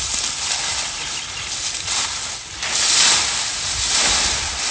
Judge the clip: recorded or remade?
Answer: recorded